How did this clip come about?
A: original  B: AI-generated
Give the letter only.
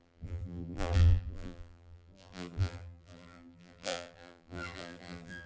B